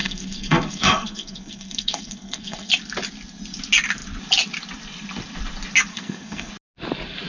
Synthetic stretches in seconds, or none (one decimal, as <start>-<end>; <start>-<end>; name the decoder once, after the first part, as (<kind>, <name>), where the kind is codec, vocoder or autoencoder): 0.0-2.7 (codec, SNAC); 5.9-6.5